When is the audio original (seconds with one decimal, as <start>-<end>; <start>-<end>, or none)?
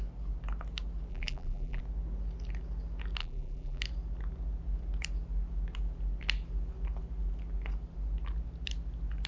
0.0-1.1; 1.8-3.2; 3.8-9.3